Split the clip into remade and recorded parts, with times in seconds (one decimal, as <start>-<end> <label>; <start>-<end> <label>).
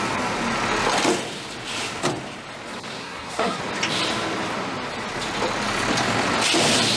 0.0-3.0 recorded; 3.0-3.6 remade; 3.6-7.0 recorded